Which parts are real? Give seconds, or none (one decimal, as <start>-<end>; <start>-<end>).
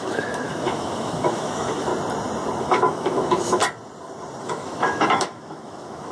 1.9-2.6; 3.6-4.4